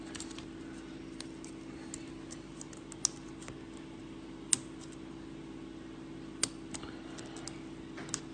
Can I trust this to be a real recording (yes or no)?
yes